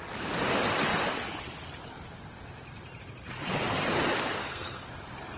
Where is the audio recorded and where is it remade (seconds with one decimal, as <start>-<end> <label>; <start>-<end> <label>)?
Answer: 0.0-4.4 recorded; 4.4-4.9 remade; 4.9-5.4 recorded